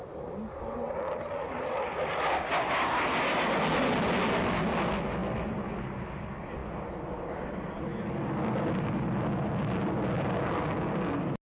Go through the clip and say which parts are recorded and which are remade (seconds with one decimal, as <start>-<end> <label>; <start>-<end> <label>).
0.0-11.4 recorded